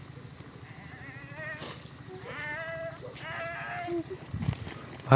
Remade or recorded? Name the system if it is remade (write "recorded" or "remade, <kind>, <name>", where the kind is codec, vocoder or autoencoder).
recorded